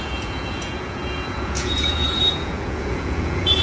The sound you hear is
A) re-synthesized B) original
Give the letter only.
A